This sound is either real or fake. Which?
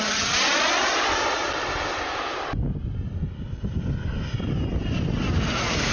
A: real